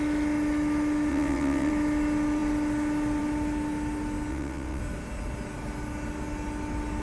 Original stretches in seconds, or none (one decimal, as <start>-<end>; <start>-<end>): 0.0-1.1; 1.7-4.3; 4.8-7.0